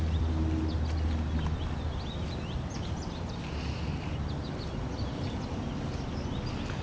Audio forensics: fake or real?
real